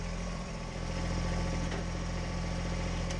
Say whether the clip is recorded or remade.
remade